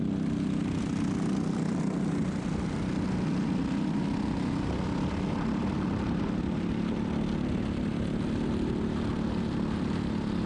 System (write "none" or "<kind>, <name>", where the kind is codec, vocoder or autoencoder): none